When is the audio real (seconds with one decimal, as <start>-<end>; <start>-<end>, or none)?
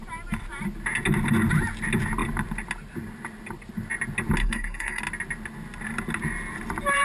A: 0.0-4.4; 5.0-7.0